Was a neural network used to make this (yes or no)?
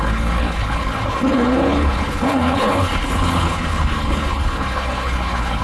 yes